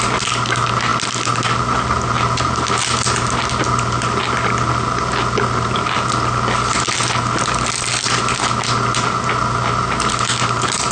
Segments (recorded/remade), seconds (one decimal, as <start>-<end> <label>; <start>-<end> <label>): 0.0-10.9 recorded